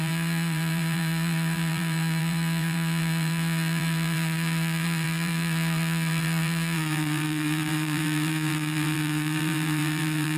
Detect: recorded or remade remade